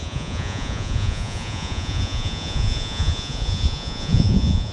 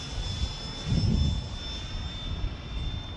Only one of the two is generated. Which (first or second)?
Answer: first